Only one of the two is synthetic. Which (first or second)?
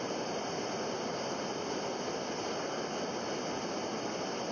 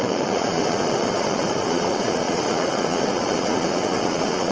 second